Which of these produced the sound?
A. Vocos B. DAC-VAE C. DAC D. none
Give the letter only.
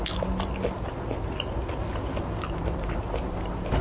D